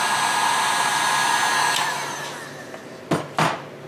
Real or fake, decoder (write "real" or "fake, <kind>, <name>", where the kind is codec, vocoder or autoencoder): real